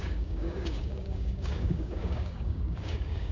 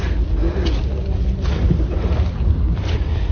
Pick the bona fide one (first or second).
second